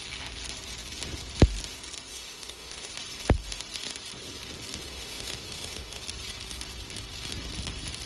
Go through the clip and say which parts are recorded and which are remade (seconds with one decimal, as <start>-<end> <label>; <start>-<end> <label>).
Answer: 0.0-2.1 recorded; 2.1-2.9 remade; 2.9-4.8 recorded; 4.8-6.0 remade; 6.0-8.1 recorded